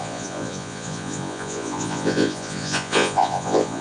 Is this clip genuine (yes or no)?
no